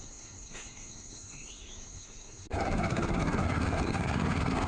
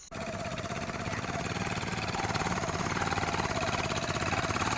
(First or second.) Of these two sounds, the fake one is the first